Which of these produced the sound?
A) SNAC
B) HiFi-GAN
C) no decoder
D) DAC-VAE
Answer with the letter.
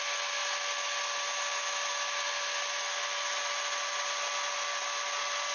C